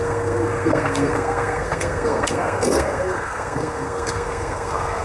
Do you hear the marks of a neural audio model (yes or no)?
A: yes